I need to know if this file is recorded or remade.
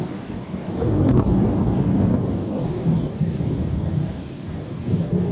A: remade